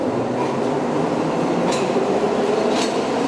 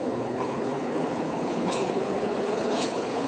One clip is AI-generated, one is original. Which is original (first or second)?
first